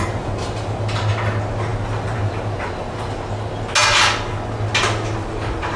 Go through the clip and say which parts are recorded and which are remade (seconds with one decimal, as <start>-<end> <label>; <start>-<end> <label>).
0.0-1.7 recorded; 1.7-2.4 remade; 2.4-5.8 recorded